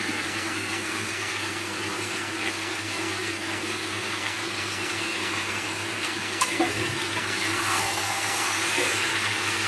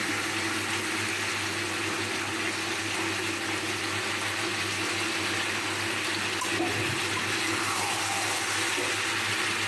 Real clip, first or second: second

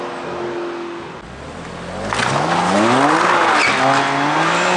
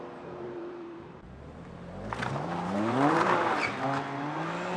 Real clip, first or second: first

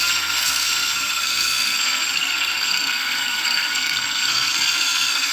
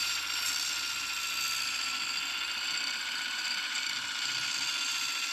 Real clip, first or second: second